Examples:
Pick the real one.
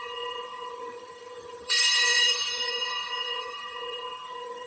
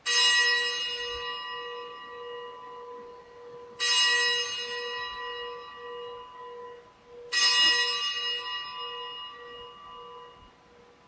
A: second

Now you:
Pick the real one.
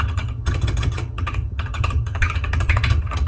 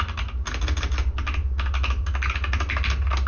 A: second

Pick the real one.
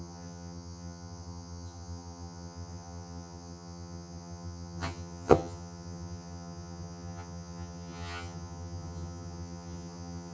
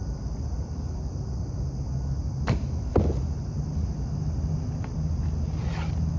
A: second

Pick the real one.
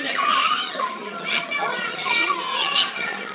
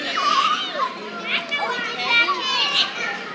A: second